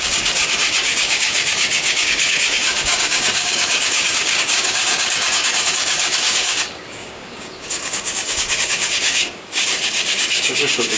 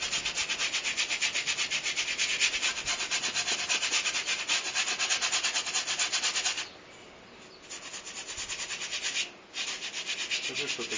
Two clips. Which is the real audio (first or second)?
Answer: second